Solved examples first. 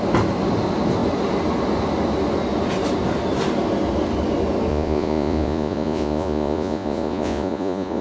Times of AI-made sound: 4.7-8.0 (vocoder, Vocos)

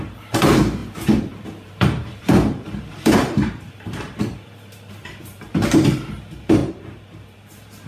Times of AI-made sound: 0.0-7.9 (vocoder, BigVGAN v2)

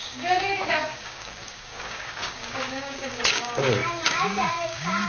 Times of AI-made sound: 0.0-5.1 (codec, DAC)